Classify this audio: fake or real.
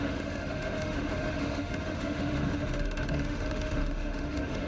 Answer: fake